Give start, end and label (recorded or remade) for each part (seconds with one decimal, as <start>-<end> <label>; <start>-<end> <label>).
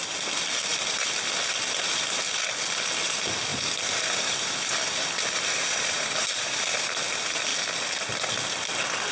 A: 0.0-0.7 recorded; 0.7-1.5 remade; 1.5-3.5 recorded; 3.5-6.1 remade; 6.1-9.1 recorded